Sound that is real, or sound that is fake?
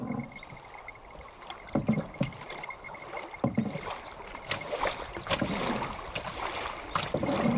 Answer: real